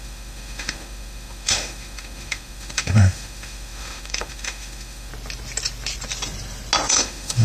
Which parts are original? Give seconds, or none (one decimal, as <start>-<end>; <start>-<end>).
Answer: 5.1-6.9